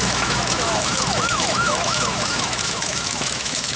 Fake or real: fake